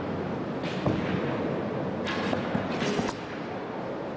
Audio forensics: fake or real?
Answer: real